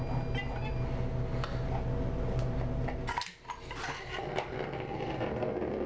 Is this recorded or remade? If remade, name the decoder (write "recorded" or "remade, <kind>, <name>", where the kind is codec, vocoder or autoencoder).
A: recorded